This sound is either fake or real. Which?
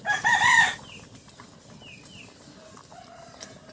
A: real